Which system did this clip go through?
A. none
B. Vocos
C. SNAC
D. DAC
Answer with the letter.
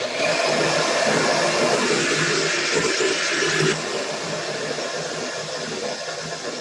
A